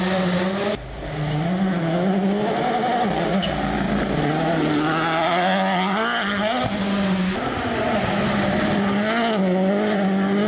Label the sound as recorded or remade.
recorded